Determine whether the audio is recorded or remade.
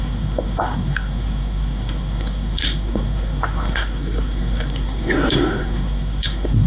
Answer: remade